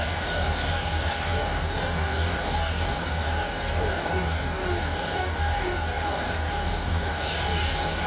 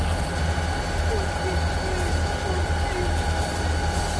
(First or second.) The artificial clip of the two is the first